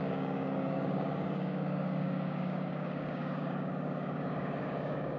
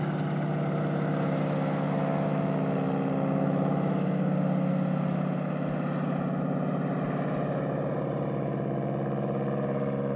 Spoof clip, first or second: first